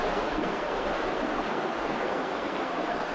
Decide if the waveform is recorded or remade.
remade